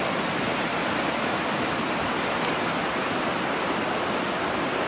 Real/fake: real